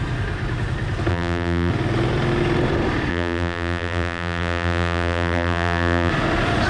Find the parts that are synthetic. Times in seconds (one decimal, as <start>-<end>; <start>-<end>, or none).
1.1-1.7; 3.1-6.1